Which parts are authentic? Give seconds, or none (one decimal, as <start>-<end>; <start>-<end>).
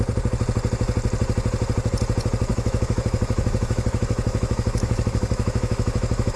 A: 0.0-2.5